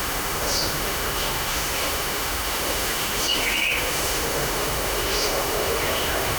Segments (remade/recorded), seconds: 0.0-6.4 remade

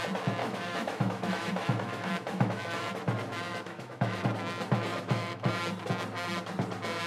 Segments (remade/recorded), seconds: 0.0-0.4 recorded; 0.4-3.0 remade; 3.0-3.5 recorded; 3.5-4.2 remade; 4.2-4.9 recorded; 4.9-5.5 remade; 5.5-7.1 recorded

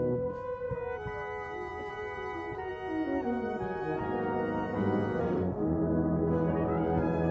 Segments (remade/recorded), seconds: 0.0-5.2 recorded; 5.2-6.5 remade; 6.5-7.3 recorded

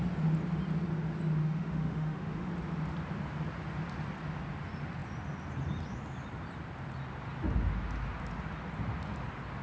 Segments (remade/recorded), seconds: 0.0-1.4 recorded; 1.4-2.5 remade; 2.5-9.6 recorded

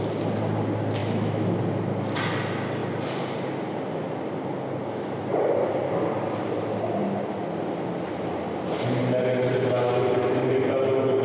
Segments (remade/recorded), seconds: 0.0-1.0 recorded; 1.0-1.6 remade; 1.6-11.2 recorded

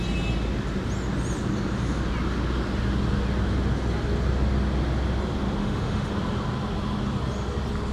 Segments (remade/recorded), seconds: 0.0-5.6 recorded; 5.6-6.1 remade; 6.1-7.9 recorded